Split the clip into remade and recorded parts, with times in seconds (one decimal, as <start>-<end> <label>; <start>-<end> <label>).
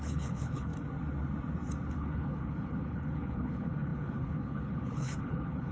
0.0-0.7 remade; 0.7-1.9 recorded; 1.9-5.7 remade